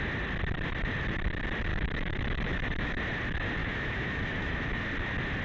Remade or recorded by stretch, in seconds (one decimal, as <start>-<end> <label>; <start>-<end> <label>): 0.0-1.7 recorded; 1.7-3.0 remade; 3.0-3.6 recorded; 3.6-4.8 remade; 4.8-5.4 recorded